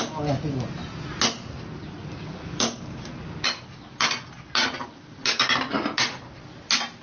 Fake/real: real